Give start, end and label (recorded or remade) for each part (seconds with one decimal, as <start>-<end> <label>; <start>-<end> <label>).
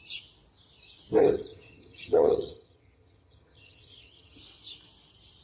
0.0-1.2 recorded; 1.2-4.4 remade; 4.4-5.4 recorded